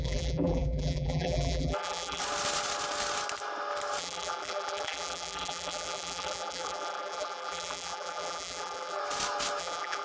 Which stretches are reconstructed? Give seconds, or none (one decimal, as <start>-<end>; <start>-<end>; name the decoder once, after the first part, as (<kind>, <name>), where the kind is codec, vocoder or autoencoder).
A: 0.0-2.2 (vocoder, BigVGAN v2); 4.0-9.0; 9.6-10.0